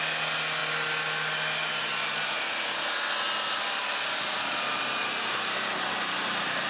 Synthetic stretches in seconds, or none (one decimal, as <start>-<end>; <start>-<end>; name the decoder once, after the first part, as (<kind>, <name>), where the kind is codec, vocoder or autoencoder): none